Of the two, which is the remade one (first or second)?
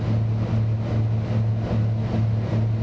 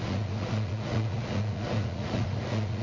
second